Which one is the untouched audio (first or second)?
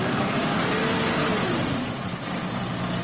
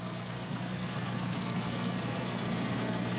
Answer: first